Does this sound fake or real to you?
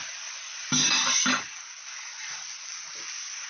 real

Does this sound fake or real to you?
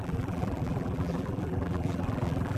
fake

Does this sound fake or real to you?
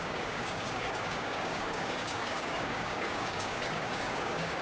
fake